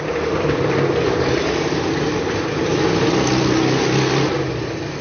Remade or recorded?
recorded